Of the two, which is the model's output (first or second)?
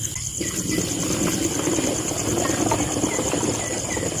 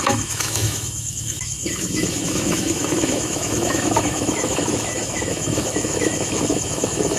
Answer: second